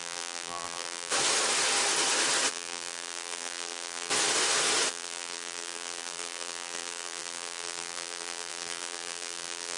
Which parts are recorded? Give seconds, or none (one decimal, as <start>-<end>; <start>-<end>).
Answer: 1.1-2.5; 4.1-4.9